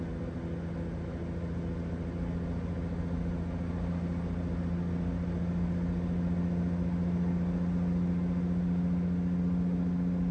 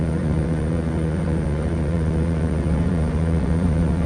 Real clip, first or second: first